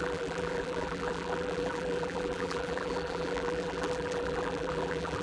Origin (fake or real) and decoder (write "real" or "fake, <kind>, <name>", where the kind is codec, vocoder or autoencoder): fake, vocoder, BigVGAN v2